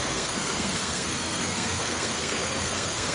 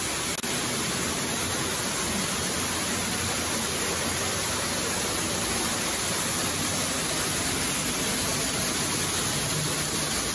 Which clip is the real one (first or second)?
second